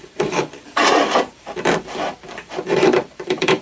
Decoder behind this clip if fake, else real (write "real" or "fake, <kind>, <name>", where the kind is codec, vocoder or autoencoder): fake, vocoder, BigVGAN v2